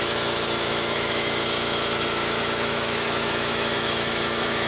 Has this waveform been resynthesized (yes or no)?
yes